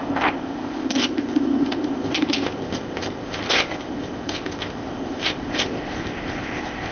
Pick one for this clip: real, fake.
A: fake